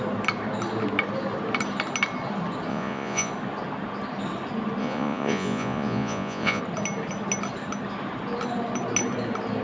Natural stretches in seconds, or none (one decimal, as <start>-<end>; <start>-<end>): 0.0-2.7; 3.3-4.8; 6.6-9.6